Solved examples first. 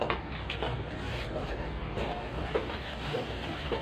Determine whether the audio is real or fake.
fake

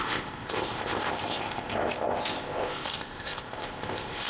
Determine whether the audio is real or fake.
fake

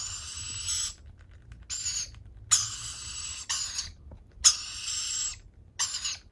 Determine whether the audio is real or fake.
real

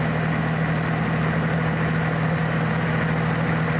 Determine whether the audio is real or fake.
real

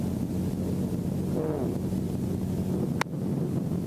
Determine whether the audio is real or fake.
real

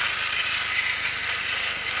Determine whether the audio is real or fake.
real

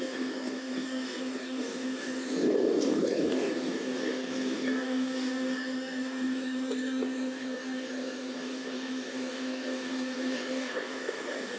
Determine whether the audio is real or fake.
fake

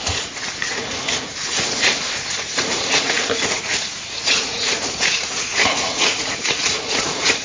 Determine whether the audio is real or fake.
fake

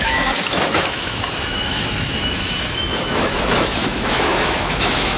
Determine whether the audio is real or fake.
fake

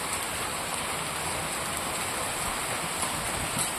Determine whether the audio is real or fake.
real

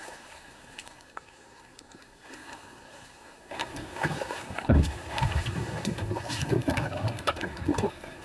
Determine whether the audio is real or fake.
fake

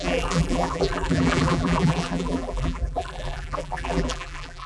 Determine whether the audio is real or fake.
fake